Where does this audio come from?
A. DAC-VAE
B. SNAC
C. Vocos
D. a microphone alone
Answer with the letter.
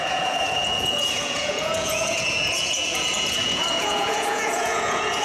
C